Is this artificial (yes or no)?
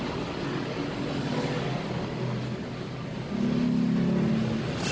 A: no